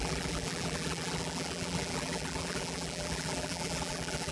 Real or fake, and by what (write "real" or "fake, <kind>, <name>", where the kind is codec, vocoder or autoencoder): fake, vocoder, BigVGAN v2